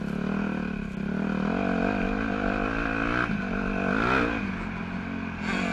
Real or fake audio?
real